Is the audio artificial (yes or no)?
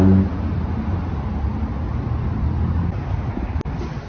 no